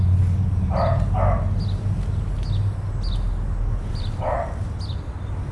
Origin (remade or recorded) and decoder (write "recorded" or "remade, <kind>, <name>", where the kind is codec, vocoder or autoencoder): recorded